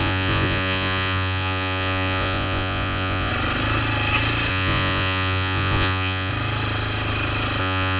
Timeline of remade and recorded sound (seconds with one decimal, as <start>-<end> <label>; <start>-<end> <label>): 0.0-3.3 remade; 3.3-4.5 recorded; 4.5-6.3 remade; 6.3-7.6 recorded; 7.6-8.0 remade